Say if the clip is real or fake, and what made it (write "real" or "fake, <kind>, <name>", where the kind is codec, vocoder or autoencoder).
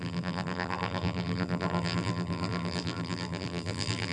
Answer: fake, vocoder, BigVGAN v2